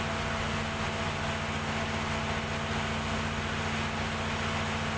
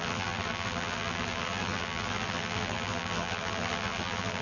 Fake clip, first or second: second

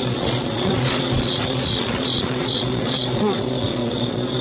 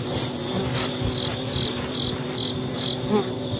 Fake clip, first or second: first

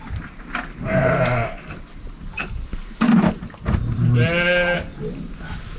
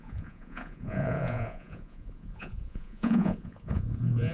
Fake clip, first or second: second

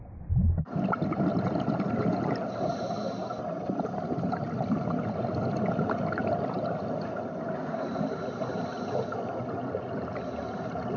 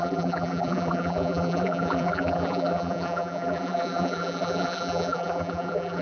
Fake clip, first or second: second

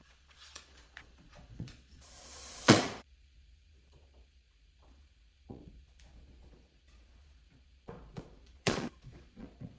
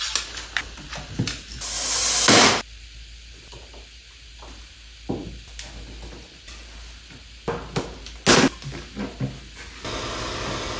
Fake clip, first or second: first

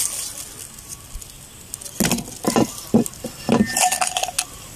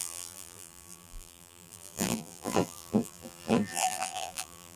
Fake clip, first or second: second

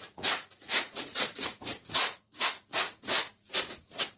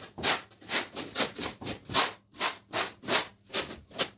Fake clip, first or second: first